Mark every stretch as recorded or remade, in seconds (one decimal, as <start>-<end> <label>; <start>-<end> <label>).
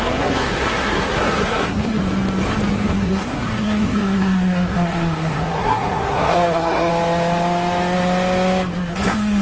0.0-2.0 remade; 2.0-2.7 recorded; 2.7-6.9 remade; 6.9-8.9 recorded; 8.9-9.4 remade